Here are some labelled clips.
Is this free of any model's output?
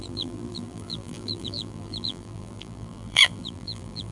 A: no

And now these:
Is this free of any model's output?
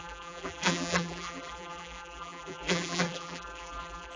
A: no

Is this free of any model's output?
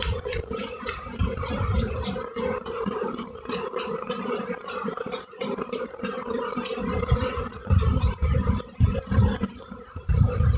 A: no